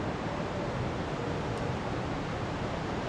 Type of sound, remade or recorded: recorded